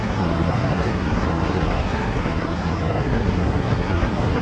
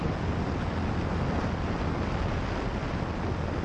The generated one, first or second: first